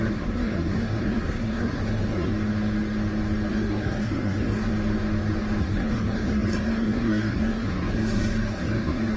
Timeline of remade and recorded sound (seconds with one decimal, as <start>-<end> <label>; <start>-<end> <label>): 0.0-2.3 remade; 2.3-3.5 recorded; 3.5-4.7 remade; 4.7-5.6 recorded; 5.6-9.2 remade